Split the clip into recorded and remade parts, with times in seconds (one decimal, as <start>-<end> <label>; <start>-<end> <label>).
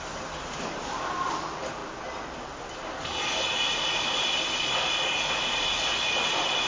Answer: 0.0-6.7 recorded